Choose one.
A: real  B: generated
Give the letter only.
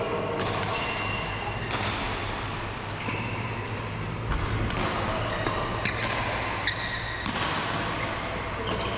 A